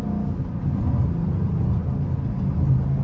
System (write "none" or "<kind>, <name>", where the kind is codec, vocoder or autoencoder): none